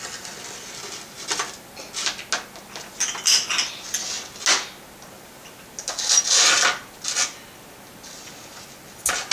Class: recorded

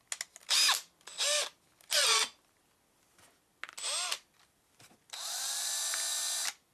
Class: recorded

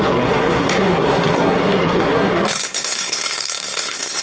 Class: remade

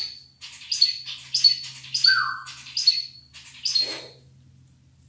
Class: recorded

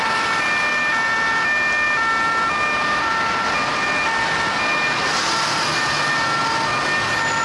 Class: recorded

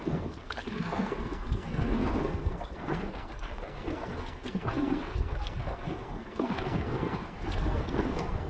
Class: remade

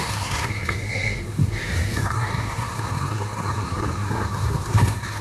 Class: remade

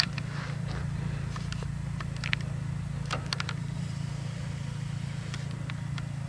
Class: recorded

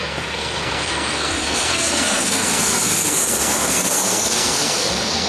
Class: remade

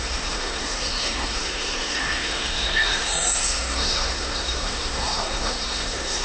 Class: remade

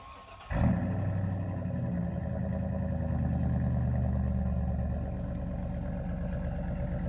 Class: recorded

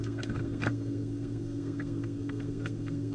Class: remade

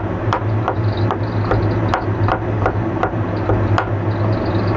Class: recorded